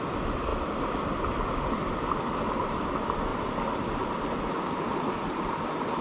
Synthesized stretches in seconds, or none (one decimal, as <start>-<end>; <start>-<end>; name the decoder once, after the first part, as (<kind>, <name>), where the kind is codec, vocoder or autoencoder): none